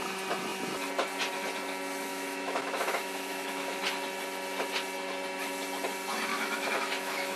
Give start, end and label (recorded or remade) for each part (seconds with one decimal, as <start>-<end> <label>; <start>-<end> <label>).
0.0-2.1 recorded; 2.1-3.8 remade; 3.8-6.3 recorded; 6.3-7.4 remade